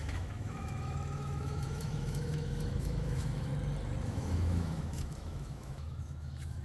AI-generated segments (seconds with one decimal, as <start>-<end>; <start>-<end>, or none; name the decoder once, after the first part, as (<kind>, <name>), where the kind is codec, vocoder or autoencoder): 0.0-3.5 (autoencoder, DAC-VAE); 4.1-6.6